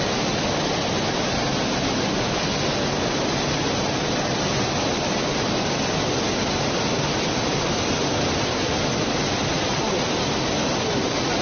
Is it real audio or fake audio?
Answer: real